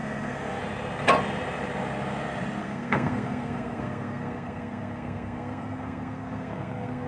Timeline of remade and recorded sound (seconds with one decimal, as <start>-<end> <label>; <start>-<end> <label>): 0.0-0.6 remade; 0.6-2.6 recorded; 2.6-7.1 remade